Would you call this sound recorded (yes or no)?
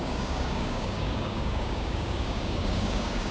no